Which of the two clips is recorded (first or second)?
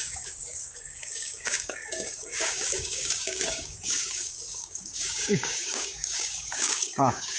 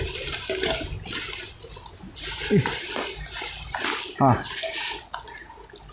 second